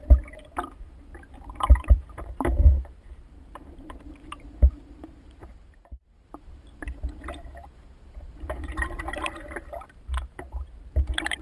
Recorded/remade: remade